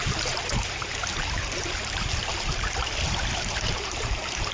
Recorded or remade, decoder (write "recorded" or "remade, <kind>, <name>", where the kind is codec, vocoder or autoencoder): remade, vocoder, BigVGAN v2